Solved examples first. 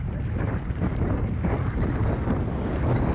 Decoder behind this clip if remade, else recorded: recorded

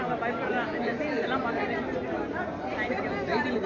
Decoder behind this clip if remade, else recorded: recorded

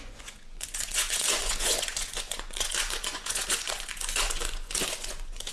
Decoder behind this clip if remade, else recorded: remade, vocoder, Vocos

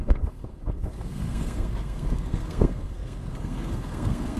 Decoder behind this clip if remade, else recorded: remade, codec, SNAC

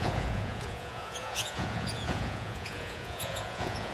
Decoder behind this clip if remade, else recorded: remade, vocoder, Vocos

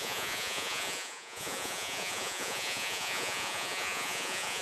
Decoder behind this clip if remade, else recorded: remade, vocoder, Vocos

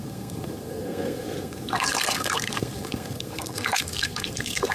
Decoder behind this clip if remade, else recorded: remade, codec, SNAC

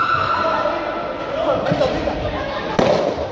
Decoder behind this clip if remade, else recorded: recorded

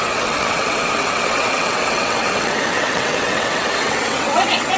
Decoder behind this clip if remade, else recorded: remade, vocoder, WaveNeXt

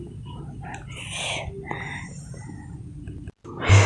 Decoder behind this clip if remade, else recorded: recorded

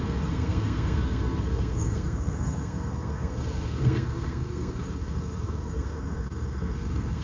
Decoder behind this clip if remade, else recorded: remade, codec, SNAC